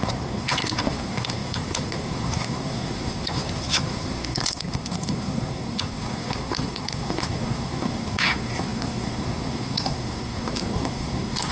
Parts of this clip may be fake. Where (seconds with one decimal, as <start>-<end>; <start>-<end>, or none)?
0.0-11.5